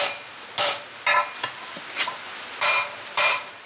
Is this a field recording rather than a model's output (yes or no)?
yes